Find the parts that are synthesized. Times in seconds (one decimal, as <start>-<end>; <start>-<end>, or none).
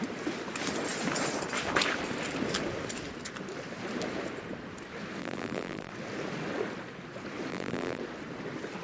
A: 5.2-5.9; 7.5-8.0